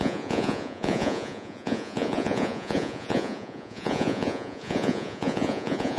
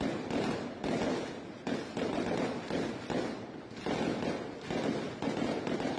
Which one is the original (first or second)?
second